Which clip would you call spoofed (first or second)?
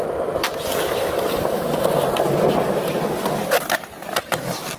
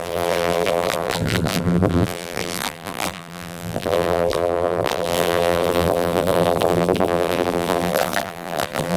second